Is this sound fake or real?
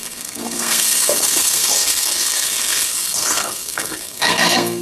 fake